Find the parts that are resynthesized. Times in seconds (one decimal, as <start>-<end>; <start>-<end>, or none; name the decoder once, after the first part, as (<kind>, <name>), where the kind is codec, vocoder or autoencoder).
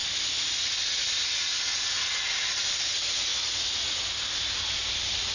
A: 3.3-4.0 (vocoder, Vocos)